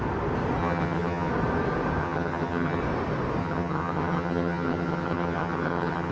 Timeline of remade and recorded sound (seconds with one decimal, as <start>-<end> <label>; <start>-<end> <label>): 0.0-0.6 recorded; 0.6-1.3 remade; 1.3-2.0 recorded; 2.0-2.8 remade; 2.8-3.4 recorded; 3.4-6.1 remade